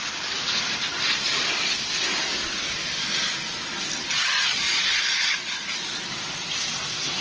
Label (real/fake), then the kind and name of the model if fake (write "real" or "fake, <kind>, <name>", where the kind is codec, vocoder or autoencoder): real